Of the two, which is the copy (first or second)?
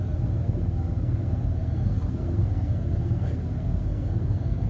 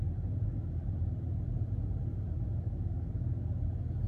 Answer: first